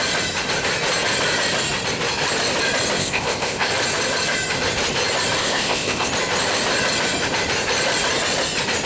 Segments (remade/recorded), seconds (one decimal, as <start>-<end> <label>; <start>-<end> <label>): 0.0-3.0 recorded; 3.0-3.7 remade; 3.7-5.4 recorded; 5.4-6.1 remade; 6.1-8.9 recorded